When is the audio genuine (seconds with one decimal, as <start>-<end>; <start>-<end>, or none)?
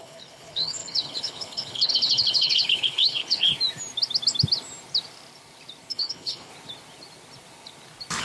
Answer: 3.5-5.9; 6.5-8.2